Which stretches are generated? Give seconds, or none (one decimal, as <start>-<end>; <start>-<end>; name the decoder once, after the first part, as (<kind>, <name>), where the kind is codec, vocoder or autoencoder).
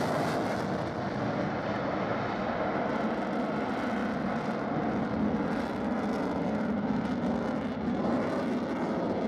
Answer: none